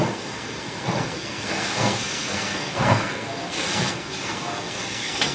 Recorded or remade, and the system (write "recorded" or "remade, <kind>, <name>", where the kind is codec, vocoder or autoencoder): remade, codec, SNAC